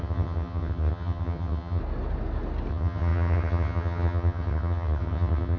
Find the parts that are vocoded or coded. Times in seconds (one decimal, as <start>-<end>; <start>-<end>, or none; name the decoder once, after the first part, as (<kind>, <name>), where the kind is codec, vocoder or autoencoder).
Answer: 0.0-1.8 (vocoder, HiFi-GAN); 2.7-5.6